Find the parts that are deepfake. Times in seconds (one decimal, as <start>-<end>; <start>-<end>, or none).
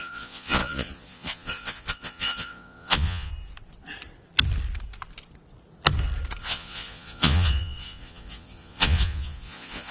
0.0-3.3; 6.4-9.9